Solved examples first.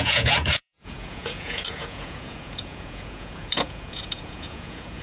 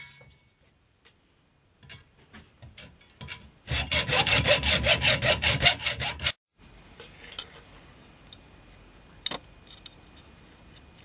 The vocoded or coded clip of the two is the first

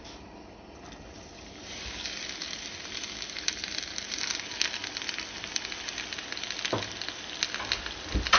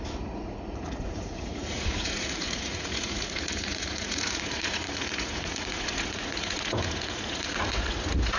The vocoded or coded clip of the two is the second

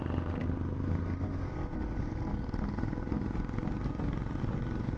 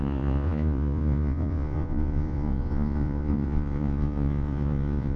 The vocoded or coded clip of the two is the second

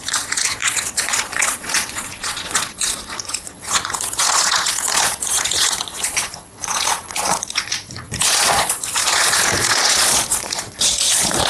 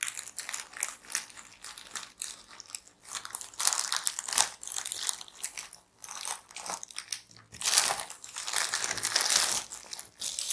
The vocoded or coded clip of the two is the first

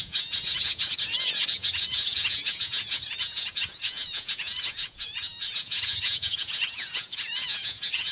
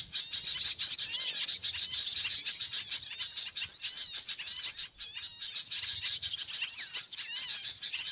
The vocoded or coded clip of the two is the first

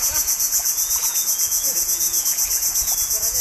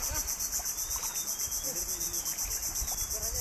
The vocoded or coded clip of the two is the first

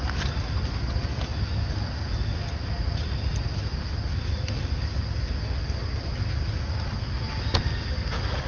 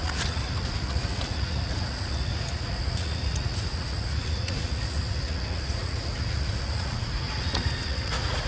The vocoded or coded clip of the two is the second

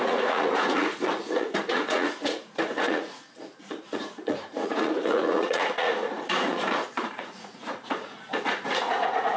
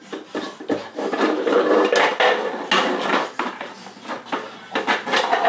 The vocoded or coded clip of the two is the first